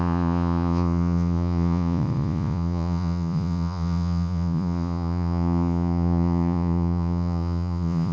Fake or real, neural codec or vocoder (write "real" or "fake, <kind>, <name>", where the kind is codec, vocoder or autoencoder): fake, vocoder, Vocos